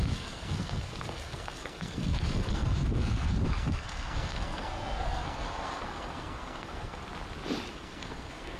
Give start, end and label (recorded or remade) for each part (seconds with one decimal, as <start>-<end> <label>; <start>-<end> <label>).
0.0-7.0 remade; 7.0-7.7 recorded; 7.7-8.6 remade